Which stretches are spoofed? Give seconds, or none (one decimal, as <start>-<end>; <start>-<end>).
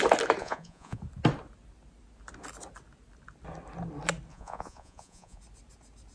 0.4-1.0; 4.3-5.4